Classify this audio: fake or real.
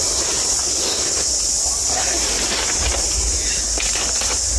real